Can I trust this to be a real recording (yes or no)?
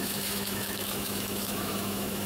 no